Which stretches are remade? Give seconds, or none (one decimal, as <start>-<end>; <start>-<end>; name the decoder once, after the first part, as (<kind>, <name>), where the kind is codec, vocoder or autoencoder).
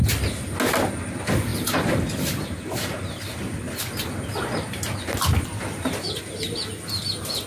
1.5-3.6 (vocoder, BigVGAN v2)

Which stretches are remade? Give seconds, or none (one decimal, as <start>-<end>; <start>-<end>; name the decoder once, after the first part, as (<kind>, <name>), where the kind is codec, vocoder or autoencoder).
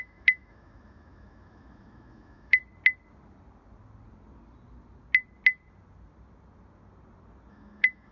0.0-2.6 (autoencoder, DAC-VAE); 7.5-8.1